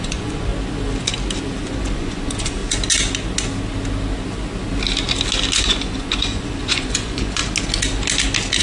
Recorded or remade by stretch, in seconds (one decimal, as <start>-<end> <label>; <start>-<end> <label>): 0.0-0.5 remade; 0.5-1.6 recorded; 1.6-2.6 remade; 2.6-5.6 recorded; 5.6-7.4 remade; 7.4-8.6 recorded